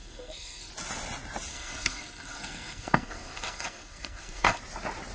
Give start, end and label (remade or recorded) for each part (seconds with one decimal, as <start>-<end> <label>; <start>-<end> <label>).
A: 0.0-0.7 remade; 0.7-1.5 recorded; 1.5-4.6 remade; 4.6-5.1 recorded